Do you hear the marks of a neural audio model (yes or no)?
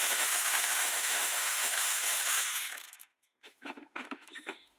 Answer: yes